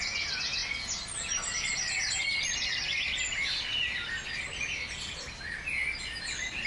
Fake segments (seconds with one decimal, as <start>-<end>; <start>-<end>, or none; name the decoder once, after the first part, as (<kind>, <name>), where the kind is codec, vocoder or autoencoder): none